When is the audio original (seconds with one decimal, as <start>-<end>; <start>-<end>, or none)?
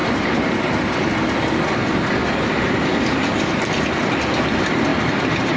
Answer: 1.1-4.9